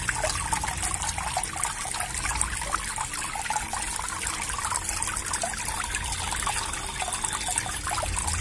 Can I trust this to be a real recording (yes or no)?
yes